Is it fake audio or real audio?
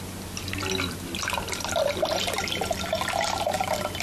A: real